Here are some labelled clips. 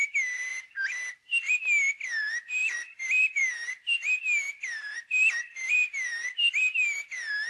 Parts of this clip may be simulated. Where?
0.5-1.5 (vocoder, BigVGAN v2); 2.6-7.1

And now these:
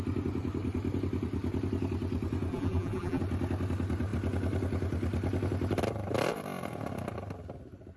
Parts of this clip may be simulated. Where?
2.5-3.2 (vocoder, BigVGAN v2)

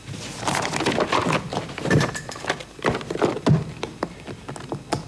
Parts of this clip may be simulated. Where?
1.5-2.4 (vocoder, BigVGAN v2)

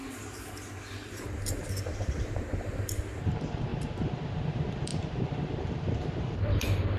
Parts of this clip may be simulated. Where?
0.0-7.0 (vocoder, BigVGAN v2)

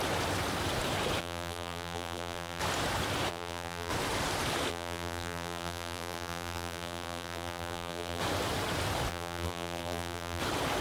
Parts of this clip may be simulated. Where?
1.2-2.6 (vocoder, BigVGAN v2); 3.3-3.9; 4.7-8.2; 9.1-10.4

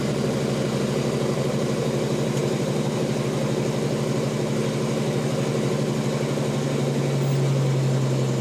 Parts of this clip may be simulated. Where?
2.4-3.1 (vocoder, BigVGAN v2)